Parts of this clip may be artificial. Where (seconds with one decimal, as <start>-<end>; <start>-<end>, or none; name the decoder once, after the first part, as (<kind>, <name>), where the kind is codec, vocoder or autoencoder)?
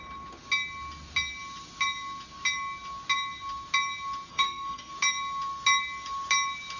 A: 4.3-4.9 (codec, SNAC)